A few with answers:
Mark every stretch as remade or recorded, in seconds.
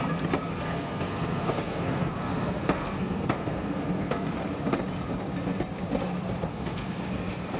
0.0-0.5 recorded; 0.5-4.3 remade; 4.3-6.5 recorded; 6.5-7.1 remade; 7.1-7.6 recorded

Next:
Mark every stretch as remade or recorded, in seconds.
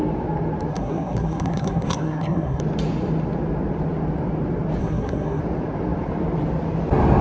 0.0-0.7 recorded; 0.7-2.6 remade; 2.6-4.8 recorded; 4.8-5.4 remade; 5.4-7.2 recorded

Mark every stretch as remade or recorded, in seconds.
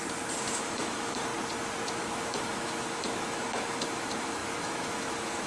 0.0-0.6 recorded; 0.6-1.3 remade; 1.3-1.9 recorded; 1.9-5.5 remade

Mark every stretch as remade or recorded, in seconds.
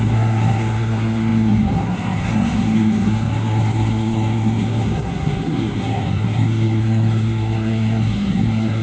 0.0-8.8 remade